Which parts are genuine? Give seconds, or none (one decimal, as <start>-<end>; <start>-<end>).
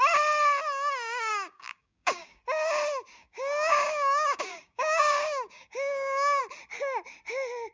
0.0-1.3; 2.4-3.2; 6.4-7.7